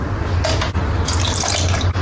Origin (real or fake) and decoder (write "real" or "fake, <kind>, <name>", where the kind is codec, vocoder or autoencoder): real